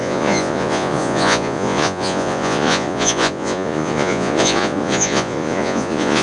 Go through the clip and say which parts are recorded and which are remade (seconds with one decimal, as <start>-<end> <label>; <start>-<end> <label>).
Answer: 0.0-6.2 remade